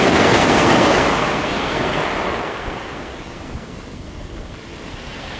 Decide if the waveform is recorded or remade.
remade